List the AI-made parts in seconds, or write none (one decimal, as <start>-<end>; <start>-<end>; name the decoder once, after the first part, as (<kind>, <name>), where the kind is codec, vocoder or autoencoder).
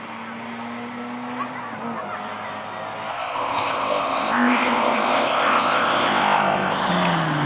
3.1-6.9 (codec, ZipCodec)